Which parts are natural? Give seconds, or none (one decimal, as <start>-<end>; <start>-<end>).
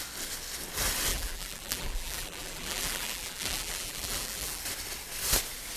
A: 0.0-1.1; 4.6-5.8